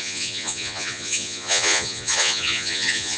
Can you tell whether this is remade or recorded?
remade